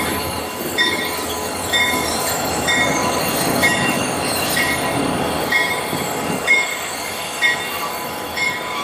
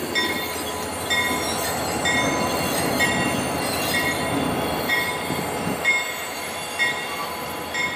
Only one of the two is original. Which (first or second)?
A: second